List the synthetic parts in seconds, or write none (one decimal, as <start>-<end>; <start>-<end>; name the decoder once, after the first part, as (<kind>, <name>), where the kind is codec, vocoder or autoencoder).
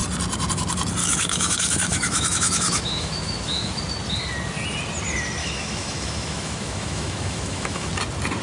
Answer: 1.0-3.8 (autoencoder, DAC-VAE); 5.4-7.9